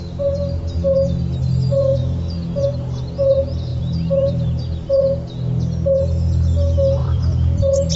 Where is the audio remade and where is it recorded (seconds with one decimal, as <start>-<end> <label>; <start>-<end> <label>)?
0.0-3.7 recorded; 3.7-4.9 remade; 4.9-7.0 recorded; 7.0-8.0 remade